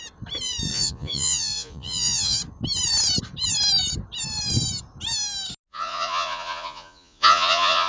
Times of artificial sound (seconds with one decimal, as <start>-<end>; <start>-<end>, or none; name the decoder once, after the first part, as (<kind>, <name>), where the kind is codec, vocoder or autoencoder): 0.7-2.4 (vocoder, Vocos); 5.7-7.9